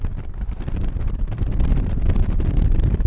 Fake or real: fake